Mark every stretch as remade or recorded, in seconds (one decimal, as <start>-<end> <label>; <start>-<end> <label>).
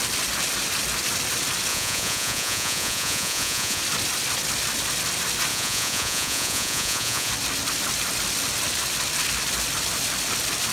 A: 0.0-1.7 recorded; 1.7-3.8 remade; 3.8-5.5 recorded; 5.5-7.3 remade; 7.3-10.7 recorded